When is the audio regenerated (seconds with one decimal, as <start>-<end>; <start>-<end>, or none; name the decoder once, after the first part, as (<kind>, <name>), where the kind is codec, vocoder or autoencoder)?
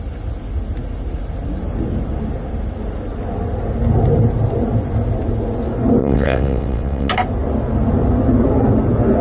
6.0-7.1 (vocoder, WaveNeXt)